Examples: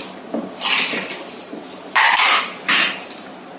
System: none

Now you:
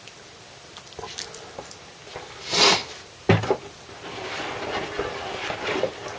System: none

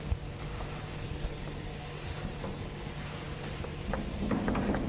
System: none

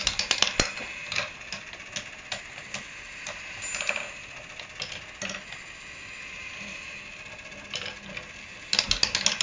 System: none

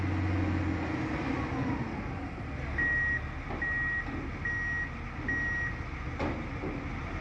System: none